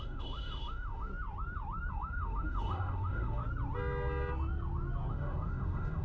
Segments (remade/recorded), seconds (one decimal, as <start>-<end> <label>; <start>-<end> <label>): 0.0-1.1 remade; 1.1-1.9 recorded; 1.9-3.4 remade; 3.4-5.1 recorded; 5.1-6.0 remade